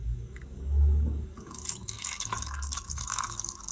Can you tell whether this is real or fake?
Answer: fake